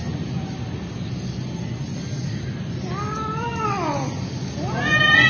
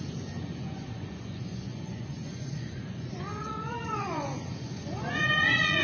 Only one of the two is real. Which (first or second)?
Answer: first